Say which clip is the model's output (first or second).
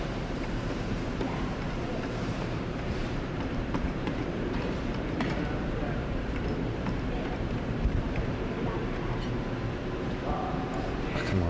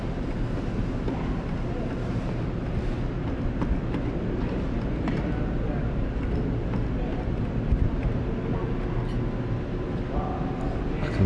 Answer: first